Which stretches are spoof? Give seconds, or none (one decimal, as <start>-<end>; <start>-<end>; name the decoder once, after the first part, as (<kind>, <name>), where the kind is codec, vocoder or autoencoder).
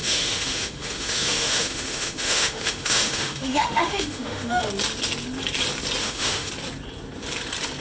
0.0-4.7 (autoencoder, DAC-VAE); 6.0-6.5